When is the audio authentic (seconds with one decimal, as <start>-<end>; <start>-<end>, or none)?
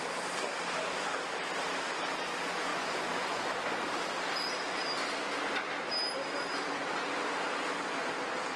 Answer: 0.0-2.7; 3.5-8.6